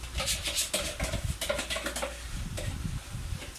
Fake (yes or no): no